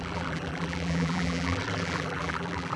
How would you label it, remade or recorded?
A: remade